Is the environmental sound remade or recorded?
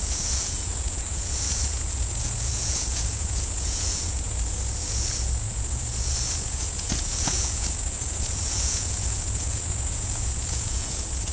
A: remade